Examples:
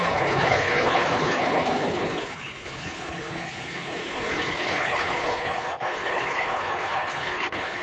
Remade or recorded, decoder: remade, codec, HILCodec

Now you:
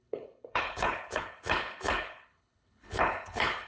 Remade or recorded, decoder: remade, codec, HILCodec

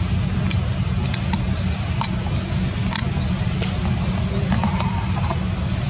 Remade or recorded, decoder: recorded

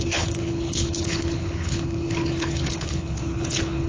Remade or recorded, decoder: remade, codec, HILCodec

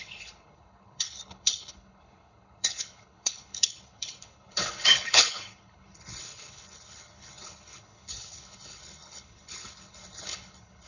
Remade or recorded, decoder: remade, codec, HILCodec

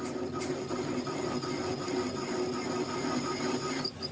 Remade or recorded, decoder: recorded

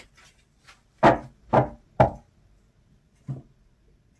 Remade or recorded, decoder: recorded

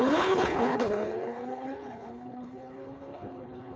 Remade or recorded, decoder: remade, codec, HILCodec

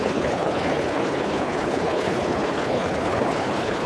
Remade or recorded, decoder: remade, codec, HILCodec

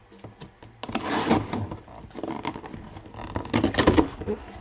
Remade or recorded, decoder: recorded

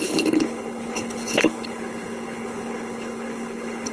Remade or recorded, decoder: remade, codec, HILCodec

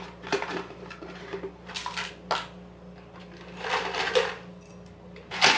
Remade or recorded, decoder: recorded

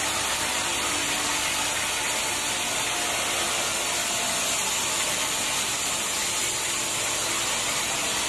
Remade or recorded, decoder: recorded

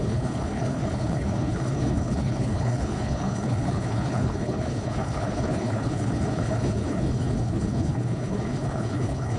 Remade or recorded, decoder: remade, codec, HILCodec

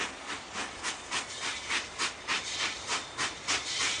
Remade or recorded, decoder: recorded